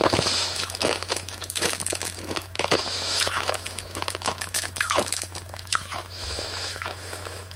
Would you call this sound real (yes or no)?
no